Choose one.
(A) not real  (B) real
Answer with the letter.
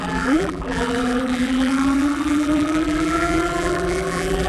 A